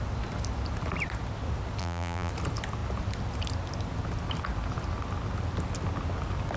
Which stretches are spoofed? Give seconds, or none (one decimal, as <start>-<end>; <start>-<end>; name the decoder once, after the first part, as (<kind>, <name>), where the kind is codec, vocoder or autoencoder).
1.8-2.3 (vocoder, BigVGAN v2)

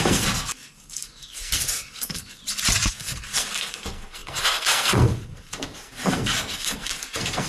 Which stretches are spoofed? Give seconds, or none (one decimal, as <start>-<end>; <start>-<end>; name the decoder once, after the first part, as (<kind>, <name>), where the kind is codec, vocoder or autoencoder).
0.0-2.4 (codec, SNAC); 2.9-7.5